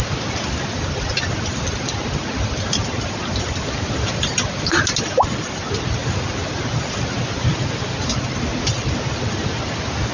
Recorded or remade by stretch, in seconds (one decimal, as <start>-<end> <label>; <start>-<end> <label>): 0.0-10.1 recorded

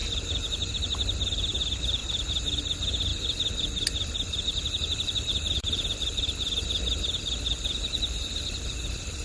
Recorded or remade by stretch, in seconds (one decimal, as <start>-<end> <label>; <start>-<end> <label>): 0.0-2.0 recorded; 2.0-2.6 remade; 2.6-3.1 recorded; 3.1-5.3 remade; 5.3-9.2 recorded

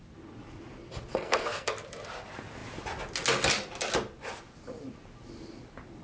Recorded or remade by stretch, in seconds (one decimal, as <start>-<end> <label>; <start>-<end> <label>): 0.0-1.1 recorded; 1.1-1.7 remade; 1.7-6.0 recorded

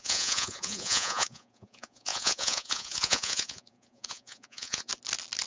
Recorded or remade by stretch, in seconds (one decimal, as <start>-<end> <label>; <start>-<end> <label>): 0.0-4.9 remade; 4.9-5.5 recorded

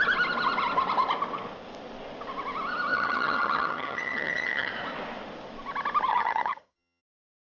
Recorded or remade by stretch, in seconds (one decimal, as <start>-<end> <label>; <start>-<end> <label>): 0.0-2.9 recorded; 2.9-4.7 remade; 4.7-6.1 recorded; 6.1-7.0 remade; 7.0-7.6 recorded

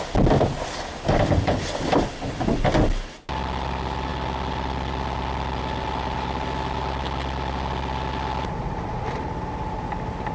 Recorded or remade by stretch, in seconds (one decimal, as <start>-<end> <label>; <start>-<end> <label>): 0.0-8.6 recorded; 8.6-9.3 remade; 9.3-10.3 recorded